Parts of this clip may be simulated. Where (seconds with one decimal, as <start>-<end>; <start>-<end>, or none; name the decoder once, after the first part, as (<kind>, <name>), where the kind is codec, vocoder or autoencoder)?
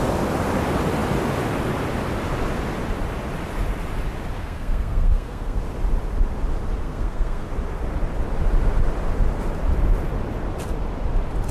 4.4-5.6 (codec, SNAC); 6.8-7.5